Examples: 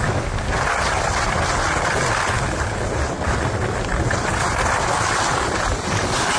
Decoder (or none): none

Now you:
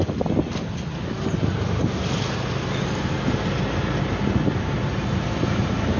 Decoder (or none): none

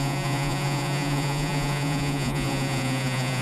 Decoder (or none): vocoder, Vocos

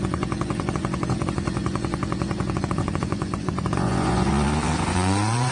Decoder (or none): vocoder, Vocos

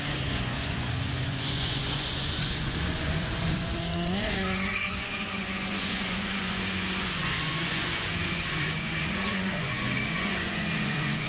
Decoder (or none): vocoder, Vocos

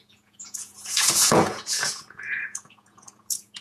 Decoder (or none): vocoder, Vocos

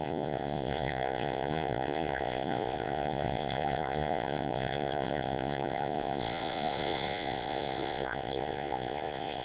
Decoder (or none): vocoder, Vocos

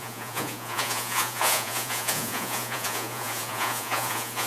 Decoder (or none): vocoder, Vocos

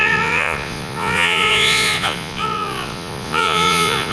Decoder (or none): vocoder, Vocos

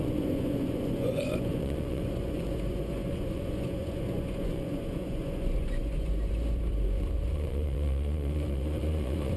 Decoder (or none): vocoder, Vocos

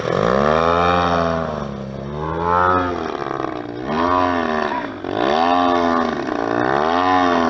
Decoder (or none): none